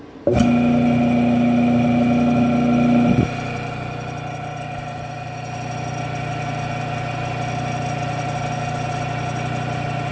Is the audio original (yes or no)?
yes